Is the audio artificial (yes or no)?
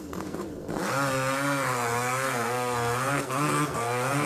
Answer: yes